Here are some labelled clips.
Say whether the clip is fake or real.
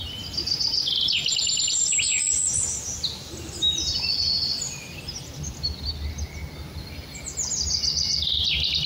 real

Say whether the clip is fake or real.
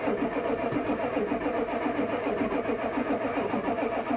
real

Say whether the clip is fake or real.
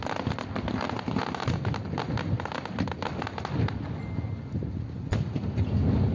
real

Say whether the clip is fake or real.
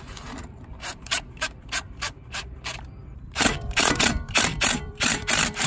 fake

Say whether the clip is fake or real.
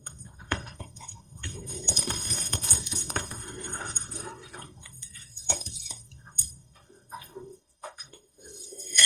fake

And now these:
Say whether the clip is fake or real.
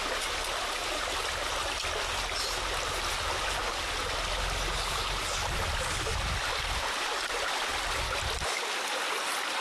real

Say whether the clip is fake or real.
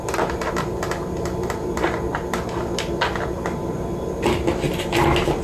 real